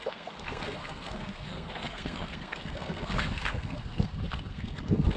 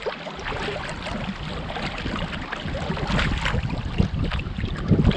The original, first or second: second